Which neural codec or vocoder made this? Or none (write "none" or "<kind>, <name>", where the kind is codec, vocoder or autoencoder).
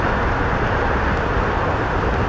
none